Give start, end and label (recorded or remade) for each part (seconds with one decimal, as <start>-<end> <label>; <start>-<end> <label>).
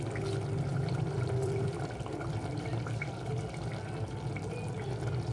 0.0-0.7 recorded; 0.7-1.7 remade; 1.7-5.3 recorded